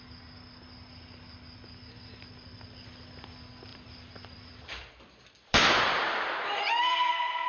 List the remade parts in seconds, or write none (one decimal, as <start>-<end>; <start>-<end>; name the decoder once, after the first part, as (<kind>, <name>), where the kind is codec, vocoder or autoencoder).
3.7-4.9 (vocoder, BigVGAN v2); 5.5-6.0